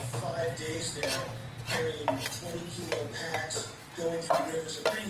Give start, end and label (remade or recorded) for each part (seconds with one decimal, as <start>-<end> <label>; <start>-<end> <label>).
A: 0.0-1.5 remade; 1.5-5.1 recorded